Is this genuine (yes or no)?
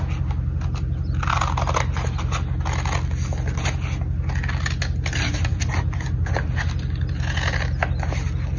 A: yes